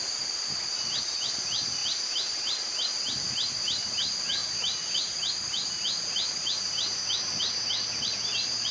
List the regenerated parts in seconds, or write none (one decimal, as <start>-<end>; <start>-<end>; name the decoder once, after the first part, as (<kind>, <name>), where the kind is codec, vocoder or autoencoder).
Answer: 1.8-2.9 (vocoder, BigVGAN v2); 4.4-5.1